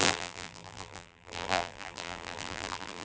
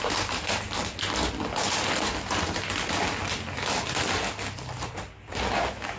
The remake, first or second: first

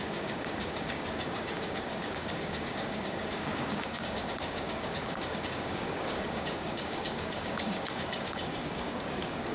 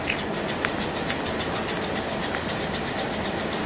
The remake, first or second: first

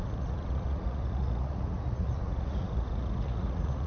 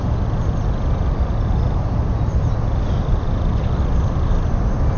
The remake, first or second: first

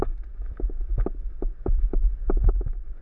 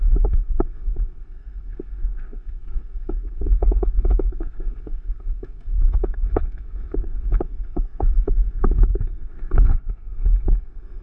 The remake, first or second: second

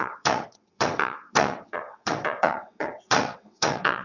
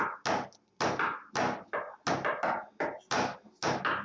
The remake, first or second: first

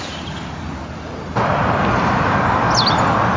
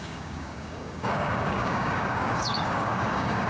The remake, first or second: second